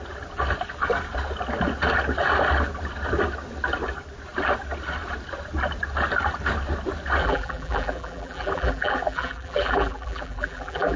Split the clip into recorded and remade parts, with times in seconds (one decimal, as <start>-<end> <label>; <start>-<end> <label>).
0.0-7.2 recorded; 7.2-11.0 remade